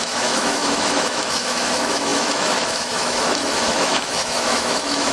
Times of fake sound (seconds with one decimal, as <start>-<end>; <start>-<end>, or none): 0.0-5.1